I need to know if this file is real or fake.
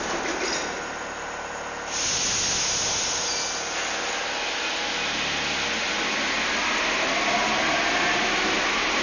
real